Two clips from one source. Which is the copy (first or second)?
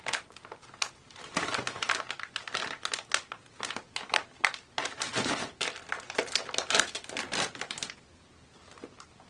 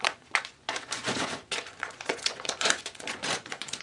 second